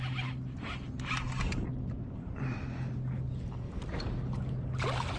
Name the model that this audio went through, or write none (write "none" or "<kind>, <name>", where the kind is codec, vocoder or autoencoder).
none